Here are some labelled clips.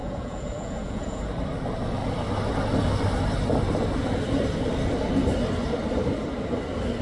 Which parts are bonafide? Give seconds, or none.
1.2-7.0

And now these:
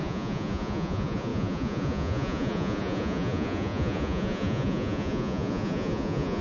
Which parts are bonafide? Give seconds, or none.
none

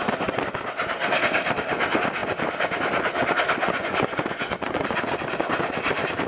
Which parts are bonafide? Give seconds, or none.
0.0-3.6; 5.5-6.3

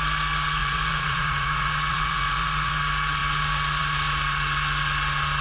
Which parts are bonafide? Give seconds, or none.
0.0-0.6; 2.8-5.4